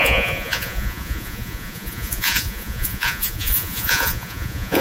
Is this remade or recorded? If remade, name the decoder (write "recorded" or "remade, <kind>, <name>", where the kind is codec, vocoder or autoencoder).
remade, vocoder, Vocos